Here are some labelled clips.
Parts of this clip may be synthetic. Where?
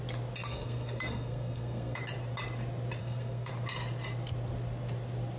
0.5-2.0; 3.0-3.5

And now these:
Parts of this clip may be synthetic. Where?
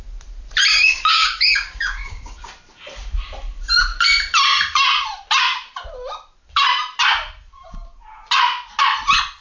0.7-2.5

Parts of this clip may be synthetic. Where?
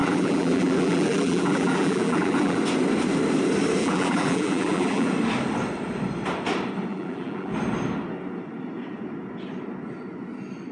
0.0-2.6; 3.8-5.1; 6.9-7.5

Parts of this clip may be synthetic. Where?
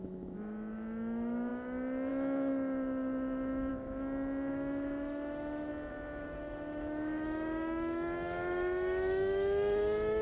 0.0-3.7; 4.5-5.7; 6.2-10.2